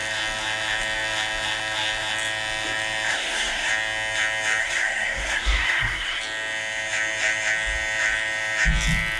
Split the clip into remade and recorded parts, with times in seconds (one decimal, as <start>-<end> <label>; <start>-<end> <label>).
0.0-3.1 recorded; 3.1-3.7 remade; 3.7-4.6 recorded; 4.6-6.2 remade; 6.2-9.2 recorded